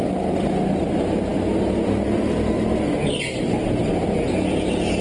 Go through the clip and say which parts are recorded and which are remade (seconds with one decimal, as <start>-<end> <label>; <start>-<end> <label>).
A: 0.0-5.0 recorded